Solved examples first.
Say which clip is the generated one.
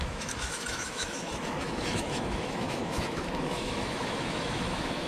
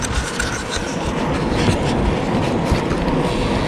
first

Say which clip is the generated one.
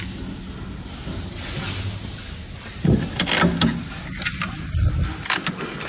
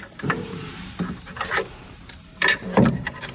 second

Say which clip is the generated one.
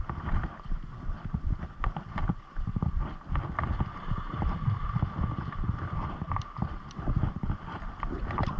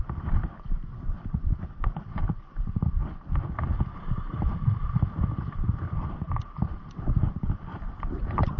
second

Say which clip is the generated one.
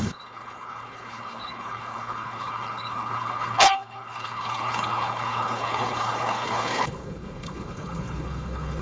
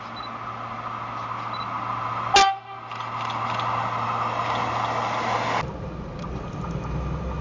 first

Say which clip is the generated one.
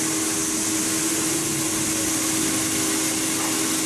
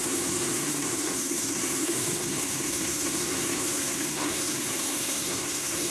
second